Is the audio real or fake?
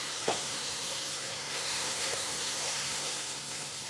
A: fake